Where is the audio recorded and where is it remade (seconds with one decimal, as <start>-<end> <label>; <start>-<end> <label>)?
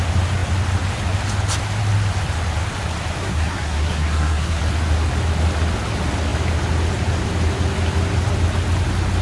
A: 0.0-3.2 recorded; 3.2-4.6 remade; 4.6-9.2 recorded